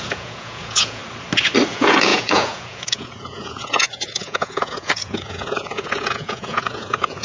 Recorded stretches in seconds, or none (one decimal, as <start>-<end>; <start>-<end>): 1.0-1.7

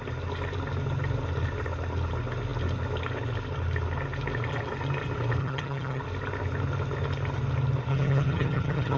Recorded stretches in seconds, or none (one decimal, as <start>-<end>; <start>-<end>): 0.0-5.4; 6.0-7.9

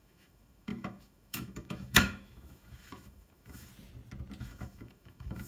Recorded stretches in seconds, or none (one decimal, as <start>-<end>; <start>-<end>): 3.7-4.4

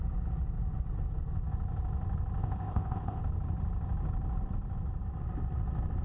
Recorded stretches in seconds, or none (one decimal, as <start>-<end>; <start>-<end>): 0.0-2.4; 3.2-6.0

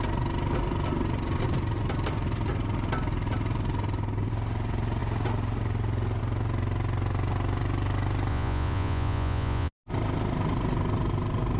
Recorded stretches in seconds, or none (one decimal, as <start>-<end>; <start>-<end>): 0.0-8.3; 9.7-11.6

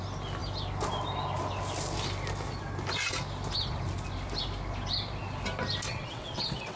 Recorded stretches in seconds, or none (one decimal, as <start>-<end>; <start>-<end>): 0.0-5.9

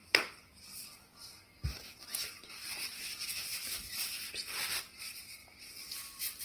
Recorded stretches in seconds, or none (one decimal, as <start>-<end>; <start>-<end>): 0.0-6.4

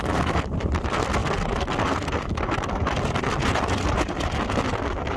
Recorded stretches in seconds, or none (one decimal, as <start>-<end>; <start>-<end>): 0.0-1.2; 2.3-5.2